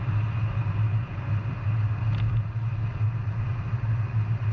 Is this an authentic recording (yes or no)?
yes